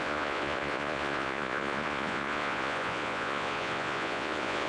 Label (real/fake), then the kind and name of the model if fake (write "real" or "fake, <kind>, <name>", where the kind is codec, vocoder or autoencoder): fake, vocoder, Vocos